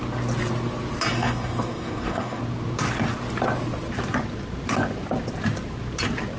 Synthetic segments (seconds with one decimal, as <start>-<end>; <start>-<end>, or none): 1.1-2.4